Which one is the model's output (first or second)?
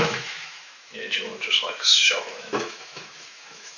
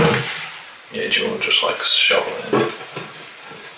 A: first